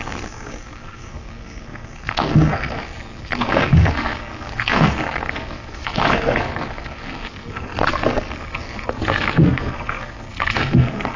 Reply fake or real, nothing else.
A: fake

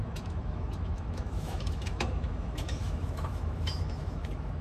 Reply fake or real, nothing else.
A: fake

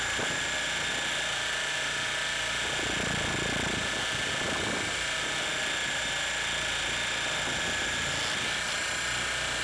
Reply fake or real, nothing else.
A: real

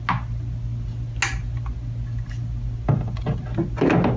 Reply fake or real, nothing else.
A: real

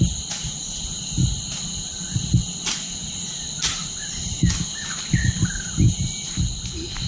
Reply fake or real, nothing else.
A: real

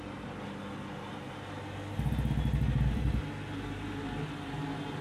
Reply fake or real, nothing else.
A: real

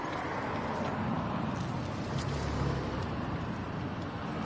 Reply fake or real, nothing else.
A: real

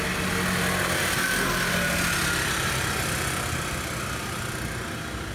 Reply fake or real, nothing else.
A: real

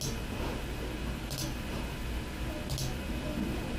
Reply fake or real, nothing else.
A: real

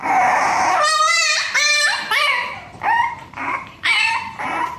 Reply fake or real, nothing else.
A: fake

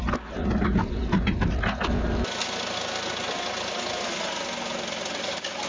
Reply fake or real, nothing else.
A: real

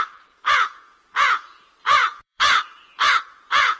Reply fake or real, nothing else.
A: fake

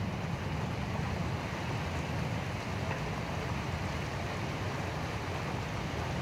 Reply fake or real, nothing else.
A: real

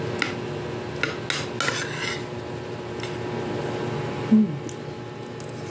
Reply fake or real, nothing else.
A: real